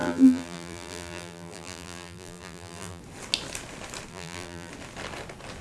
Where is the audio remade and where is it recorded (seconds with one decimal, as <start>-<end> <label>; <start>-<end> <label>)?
0.0-3.0 remade; 3.0-4.1 recorded; 4.1-4.7 remade; 4.7-5.6 recorded